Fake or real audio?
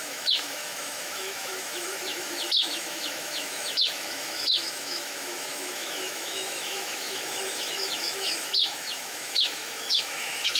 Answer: fake